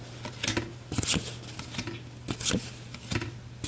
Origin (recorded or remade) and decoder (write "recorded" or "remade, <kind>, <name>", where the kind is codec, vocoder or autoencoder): recorded